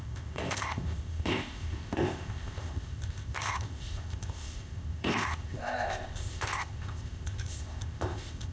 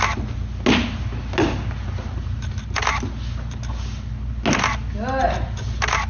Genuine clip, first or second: second